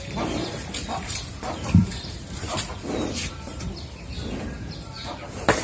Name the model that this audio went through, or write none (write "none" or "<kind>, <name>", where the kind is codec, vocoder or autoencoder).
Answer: vocoder, BigVGAN v2